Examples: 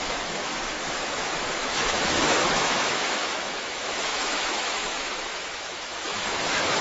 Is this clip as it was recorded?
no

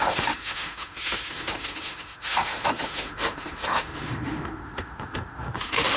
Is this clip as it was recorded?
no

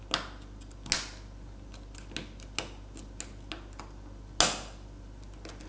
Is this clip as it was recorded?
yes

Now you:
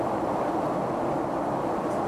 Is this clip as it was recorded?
yes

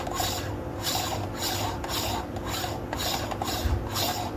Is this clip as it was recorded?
yes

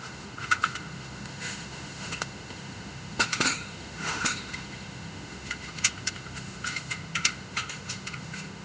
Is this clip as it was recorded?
no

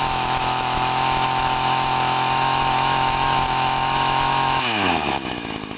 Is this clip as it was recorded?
no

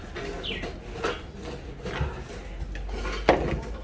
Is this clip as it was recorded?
yes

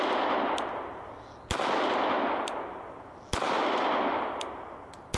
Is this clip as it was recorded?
yes